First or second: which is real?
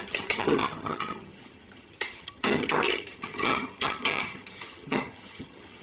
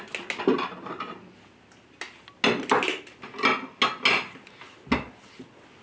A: second